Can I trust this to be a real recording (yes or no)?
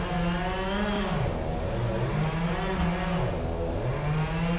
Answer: yes